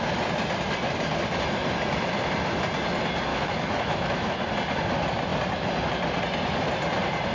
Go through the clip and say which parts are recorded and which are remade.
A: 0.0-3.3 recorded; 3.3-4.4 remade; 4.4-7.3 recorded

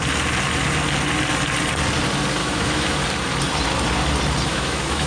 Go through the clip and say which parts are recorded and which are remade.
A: 0.0-2.4 recorded; 2.4-3.0 remade; 3.0-4.5 recorded; 4.5-5.1 remade

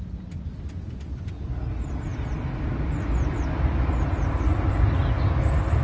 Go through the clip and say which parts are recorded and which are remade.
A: 0.0-5.8 recorded

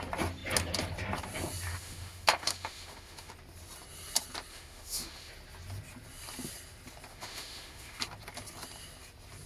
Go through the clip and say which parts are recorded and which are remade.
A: 0.0-1.7 recorded; 1.7-3.3 remade; 3.3-4.5 recorded; 4.5-5.3 remade; 5.3-7.1 recorded; 7.1-8.0 remade; 8.0-9.5 recorded

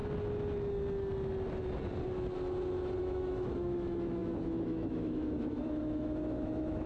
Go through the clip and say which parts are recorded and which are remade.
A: 0.0-3.0 recorded; 3.0-6.9 remade